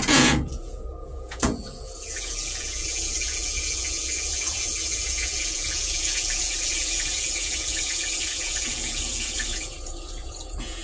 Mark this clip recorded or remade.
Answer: remade